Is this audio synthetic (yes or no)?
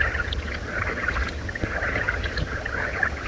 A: yes